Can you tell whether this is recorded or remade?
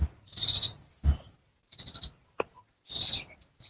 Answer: recorded